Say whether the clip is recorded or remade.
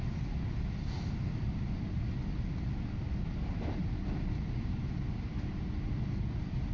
recorded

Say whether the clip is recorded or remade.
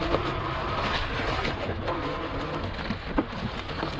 recorded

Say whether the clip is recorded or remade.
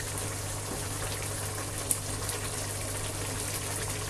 recorded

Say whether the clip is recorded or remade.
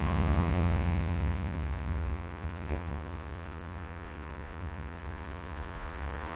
remade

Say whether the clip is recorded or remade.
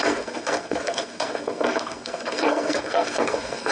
remade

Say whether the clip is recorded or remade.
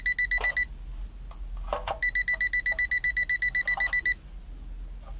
recorded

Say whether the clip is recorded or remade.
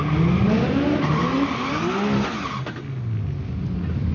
recorded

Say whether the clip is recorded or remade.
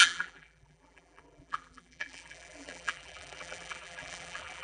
remade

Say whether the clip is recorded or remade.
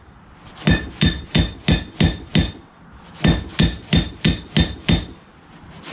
recorded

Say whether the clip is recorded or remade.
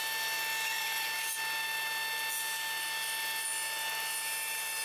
recorded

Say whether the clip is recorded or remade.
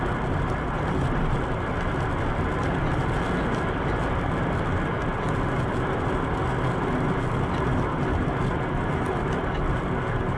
recorded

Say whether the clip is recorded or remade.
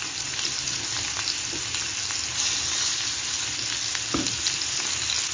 recorded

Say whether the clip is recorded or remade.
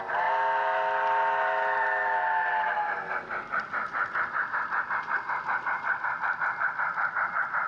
recorded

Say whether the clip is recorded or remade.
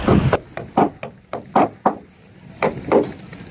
recorded